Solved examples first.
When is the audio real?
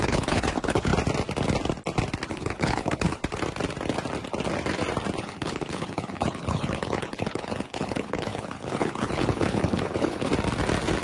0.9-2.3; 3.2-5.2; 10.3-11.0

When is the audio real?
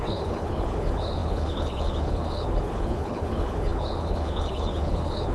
none